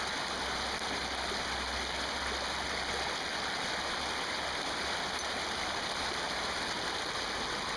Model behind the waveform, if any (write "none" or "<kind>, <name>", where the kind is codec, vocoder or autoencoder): none